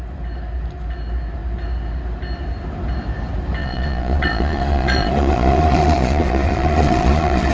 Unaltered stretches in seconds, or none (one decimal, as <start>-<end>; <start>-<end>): 0.0-3.6

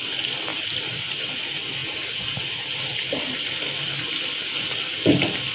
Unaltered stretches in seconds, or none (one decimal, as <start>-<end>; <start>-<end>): 0.0-0.5; 1.4-5.5

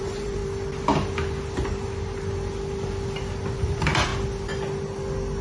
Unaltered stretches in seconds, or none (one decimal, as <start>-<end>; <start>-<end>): 0.4-3.6; 4.1-5.4

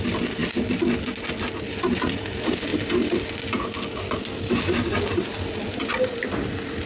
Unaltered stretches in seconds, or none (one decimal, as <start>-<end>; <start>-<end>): 0.0-6.9

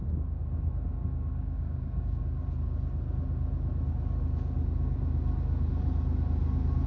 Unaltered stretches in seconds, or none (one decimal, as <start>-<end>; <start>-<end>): 0.0-1.0; 2.2-6.9

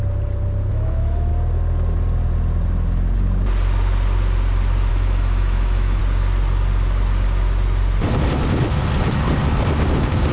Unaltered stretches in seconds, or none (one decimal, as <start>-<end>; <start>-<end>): 0.0-0.7; 1.3-4.9; 6.0-10.3

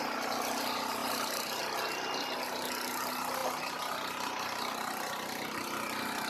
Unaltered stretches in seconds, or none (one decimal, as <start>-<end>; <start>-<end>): 0.0-1.0; 1.6-6.3

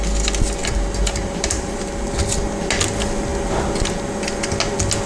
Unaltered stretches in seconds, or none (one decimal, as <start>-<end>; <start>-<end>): 0.0-0.6; 1.9-5.1